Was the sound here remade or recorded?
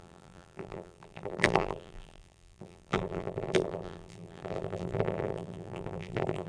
remade